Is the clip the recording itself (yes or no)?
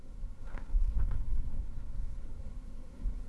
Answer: no